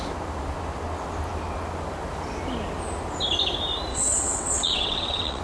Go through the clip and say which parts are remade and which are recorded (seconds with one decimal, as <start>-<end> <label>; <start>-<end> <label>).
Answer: 0.0-3.9 recorded; 3.9-5.4 remade